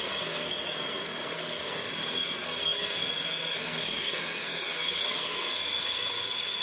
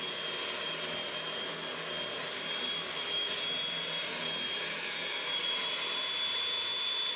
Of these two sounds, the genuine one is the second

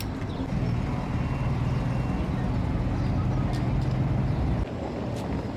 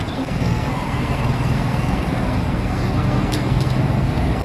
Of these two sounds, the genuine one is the first